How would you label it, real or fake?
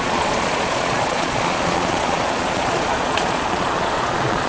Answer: fake